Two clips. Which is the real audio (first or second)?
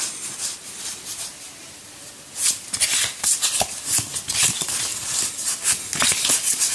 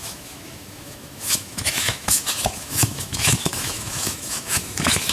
first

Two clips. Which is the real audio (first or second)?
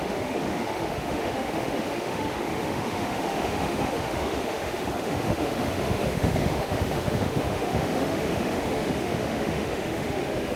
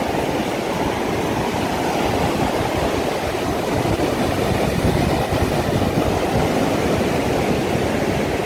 second